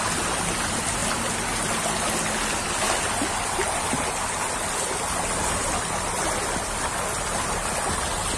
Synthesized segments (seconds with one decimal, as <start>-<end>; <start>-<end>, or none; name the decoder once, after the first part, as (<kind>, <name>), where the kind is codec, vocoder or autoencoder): none